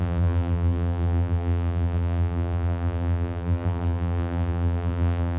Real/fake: fake